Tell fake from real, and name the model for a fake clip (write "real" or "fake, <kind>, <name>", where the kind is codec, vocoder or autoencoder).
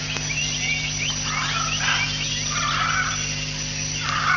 real